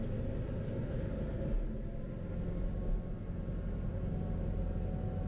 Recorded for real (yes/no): yes